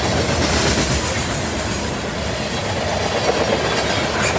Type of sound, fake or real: real